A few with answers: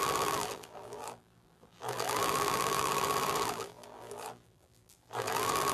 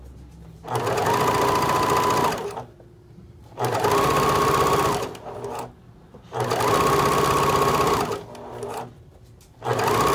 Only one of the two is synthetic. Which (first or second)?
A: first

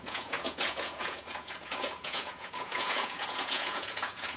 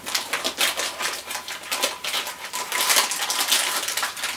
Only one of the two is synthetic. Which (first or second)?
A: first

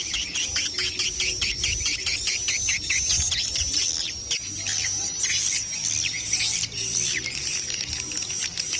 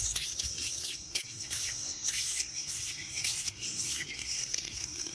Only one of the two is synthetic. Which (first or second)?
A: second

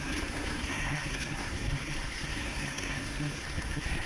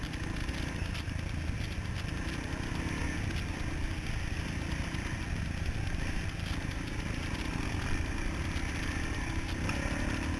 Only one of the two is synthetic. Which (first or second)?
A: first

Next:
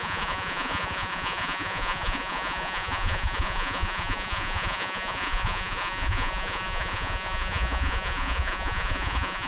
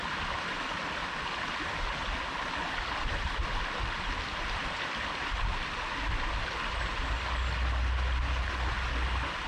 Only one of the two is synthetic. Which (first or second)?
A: first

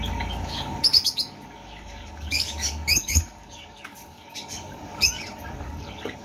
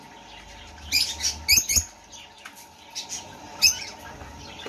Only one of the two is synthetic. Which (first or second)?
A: first